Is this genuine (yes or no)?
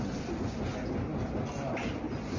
yes